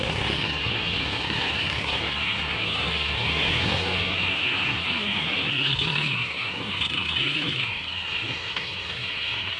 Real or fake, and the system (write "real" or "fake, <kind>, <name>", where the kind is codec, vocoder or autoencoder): fake, codec, SNAC